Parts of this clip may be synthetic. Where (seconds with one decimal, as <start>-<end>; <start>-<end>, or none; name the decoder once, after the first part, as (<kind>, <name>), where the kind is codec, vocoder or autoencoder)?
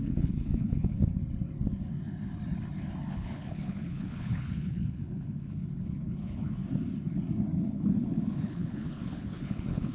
0.0-1.1 (codec, HILCodec); 3.1-6.6; 7.6-9.9